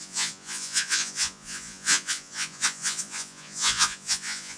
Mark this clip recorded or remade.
remade